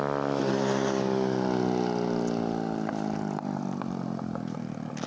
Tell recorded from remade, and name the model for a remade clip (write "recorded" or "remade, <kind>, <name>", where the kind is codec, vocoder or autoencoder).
recorded